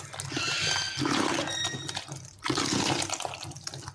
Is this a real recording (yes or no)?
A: yes